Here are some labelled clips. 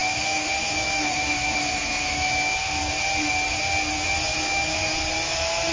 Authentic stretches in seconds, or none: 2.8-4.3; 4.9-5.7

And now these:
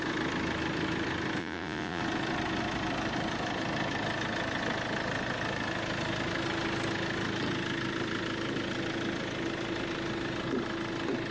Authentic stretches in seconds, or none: 0.0-1.4; 2.0-11.3

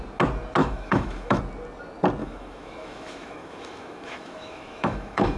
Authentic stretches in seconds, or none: 0.0-0.6; 1.4-2.2

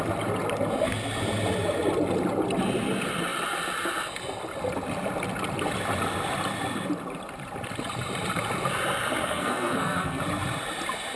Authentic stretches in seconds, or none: 0.0-9.2; 10.2-11.2

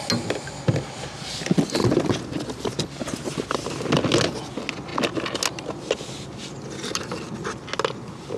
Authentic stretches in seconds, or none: 0.0-8.4